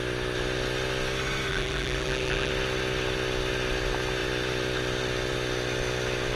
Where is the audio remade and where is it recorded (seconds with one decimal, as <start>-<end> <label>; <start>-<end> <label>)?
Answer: 0.0-1.5 recorded; 1.5-2.5 remade; 2.5-6.4 recorded